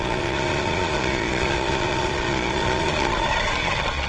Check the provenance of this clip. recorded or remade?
remade